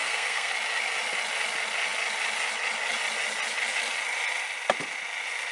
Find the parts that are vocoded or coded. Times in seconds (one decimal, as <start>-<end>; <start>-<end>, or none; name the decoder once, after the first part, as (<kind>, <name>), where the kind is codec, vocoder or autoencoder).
0.0-0.5 (codec, SNAC)